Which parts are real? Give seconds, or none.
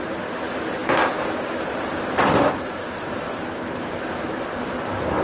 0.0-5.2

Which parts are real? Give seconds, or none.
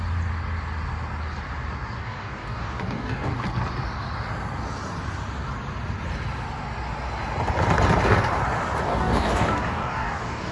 0.0-2.0; 3.3-8.9